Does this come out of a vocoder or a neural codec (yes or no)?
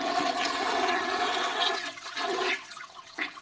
yes